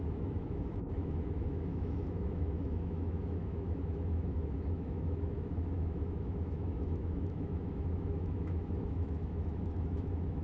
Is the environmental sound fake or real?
fake